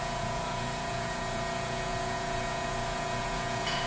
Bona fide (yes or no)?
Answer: no